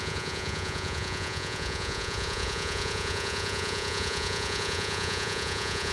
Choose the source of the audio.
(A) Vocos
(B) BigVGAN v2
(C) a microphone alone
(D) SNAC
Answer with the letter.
A